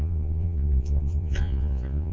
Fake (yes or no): yes